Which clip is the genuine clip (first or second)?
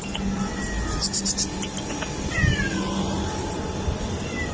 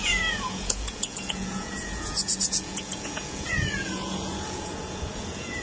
first